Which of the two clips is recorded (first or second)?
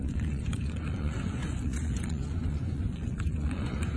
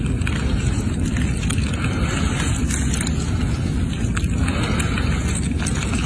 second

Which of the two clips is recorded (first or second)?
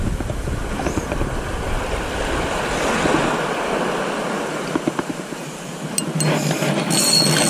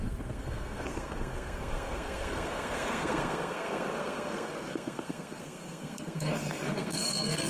first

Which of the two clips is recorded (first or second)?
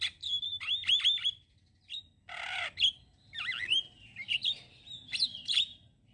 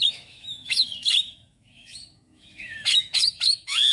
first